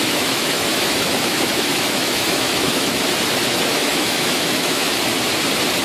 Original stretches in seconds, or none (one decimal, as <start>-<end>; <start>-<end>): 3.0-3.7; 4.9-5.8